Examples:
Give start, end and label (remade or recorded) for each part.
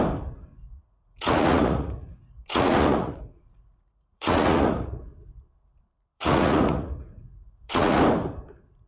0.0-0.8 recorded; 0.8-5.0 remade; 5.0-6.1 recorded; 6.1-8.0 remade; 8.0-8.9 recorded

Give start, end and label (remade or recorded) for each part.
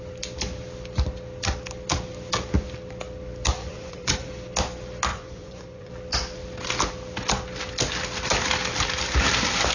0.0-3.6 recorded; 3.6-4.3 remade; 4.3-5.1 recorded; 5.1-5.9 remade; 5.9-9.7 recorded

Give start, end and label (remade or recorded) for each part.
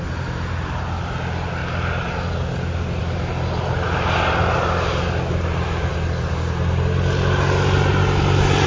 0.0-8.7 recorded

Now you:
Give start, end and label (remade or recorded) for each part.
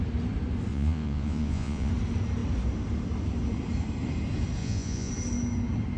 0.0-0.7 recorded; 0.7-1.9 remade; 1.9-4.6 recorded; 4.6-5.1 remade; 5.1-6.0 recorded